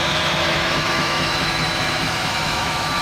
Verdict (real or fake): fake